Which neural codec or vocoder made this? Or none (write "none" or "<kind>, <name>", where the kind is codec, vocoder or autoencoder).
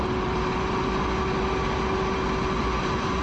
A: none